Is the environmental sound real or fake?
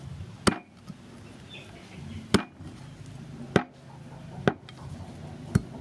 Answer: real